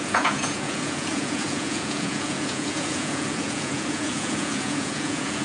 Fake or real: fake